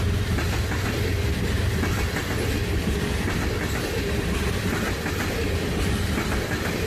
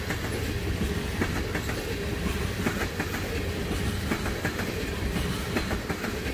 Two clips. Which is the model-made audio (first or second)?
first